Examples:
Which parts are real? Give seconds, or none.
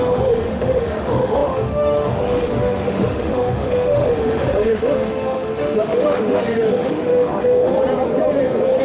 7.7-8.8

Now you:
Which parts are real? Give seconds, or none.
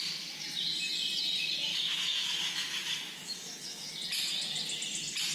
0.0-1.7; 3.9-5.3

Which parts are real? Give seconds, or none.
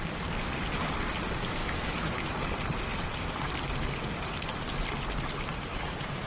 0.0-1.6; 2.3-5.7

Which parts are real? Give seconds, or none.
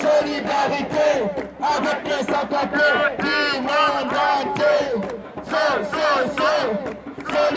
0.0-0.4; 0.9-7.6